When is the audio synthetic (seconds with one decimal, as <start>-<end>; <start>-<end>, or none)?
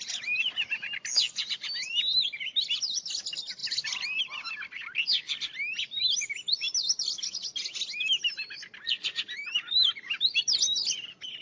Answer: none